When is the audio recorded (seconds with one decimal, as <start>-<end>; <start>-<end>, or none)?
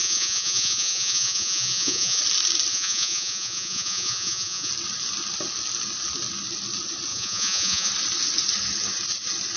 2.2-2.7; 4.7-7.1; 7.9-9.6